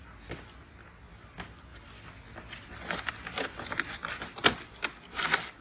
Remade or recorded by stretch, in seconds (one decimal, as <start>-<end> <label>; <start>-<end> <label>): 0.0-5.6 recorded